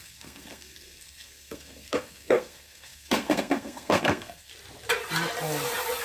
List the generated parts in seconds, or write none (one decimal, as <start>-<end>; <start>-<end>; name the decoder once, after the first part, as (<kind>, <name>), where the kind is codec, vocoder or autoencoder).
0.0-4.5 (codec, SNAC)